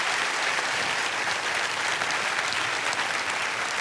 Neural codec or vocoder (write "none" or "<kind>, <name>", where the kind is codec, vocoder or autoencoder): none